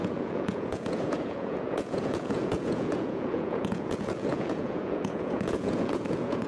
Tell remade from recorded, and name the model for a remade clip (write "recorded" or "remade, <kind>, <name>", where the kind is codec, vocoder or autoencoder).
remade, vocoder, Vocos